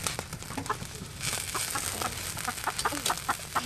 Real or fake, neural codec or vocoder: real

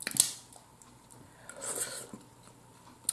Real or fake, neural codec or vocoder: real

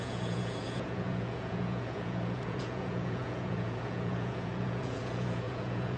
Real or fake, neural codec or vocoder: fake, vocoder, Vocos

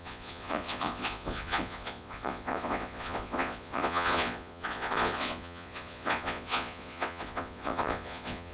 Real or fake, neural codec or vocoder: fake, vocoder, Vocos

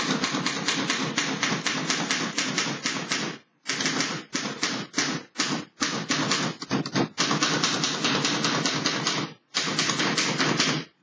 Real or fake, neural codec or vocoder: real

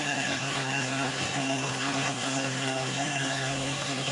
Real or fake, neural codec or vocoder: fake, codec, SNAC